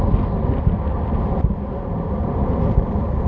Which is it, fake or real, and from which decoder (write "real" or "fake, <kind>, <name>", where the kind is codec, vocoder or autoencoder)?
real